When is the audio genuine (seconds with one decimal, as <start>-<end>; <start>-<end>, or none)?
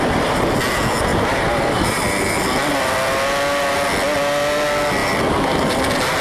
0.0-1.1; 2.9-5.0; 5.8-6.2